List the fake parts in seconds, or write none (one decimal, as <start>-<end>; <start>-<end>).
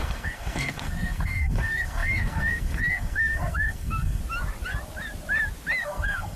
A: 0.0-4.2; 5.8-6.4